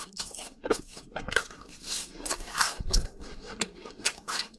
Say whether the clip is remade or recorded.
remade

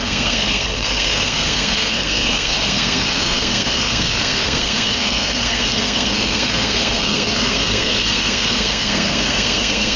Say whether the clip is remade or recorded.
remade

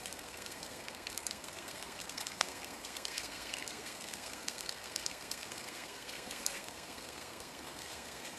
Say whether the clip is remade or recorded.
remade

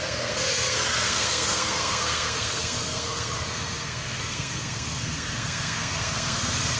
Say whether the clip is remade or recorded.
remade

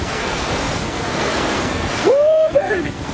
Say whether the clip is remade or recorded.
remade